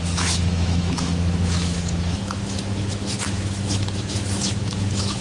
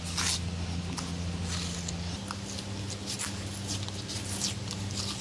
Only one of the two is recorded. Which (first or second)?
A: second